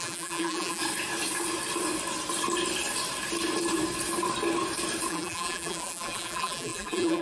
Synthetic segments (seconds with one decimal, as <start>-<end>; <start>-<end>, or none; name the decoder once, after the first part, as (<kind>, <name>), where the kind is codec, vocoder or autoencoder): 0.0-0.8 (vocoder, BigVGAN v2); 5.1-7.2